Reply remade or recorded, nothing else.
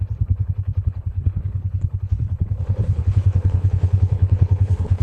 remade